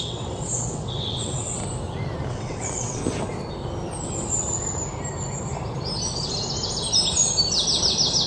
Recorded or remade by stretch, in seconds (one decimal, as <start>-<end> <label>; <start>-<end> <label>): 0.0-1.6 remade; 1.6-2.3 recorded; 2.3-3.0 remade; 3.0-8.3 recorded